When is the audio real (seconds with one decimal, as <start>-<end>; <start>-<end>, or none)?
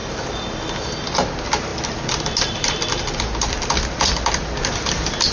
0.0-5.3